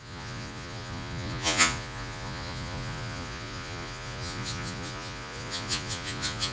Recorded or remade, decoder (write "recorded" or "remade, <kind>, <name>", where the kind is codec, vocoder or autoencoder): remade, vocoder, Vocos